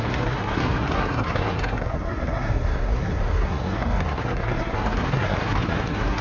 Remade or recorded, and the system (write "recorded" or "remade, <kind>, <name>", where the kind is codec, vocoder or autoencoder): remade, codec, SNAC